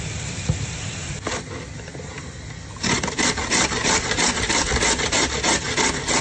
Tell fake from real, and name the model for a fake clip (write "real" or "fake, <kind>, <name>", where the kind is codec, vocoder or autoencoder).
real